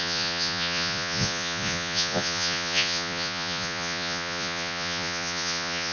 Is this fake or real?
fake